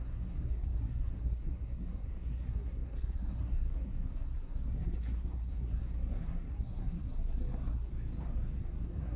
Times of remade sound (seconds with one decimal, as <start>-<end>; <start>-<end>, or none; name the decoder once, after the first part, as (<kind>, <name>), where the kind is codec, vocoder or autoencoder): 0.0-7.9 (codec, SNAC); 8.6-9.2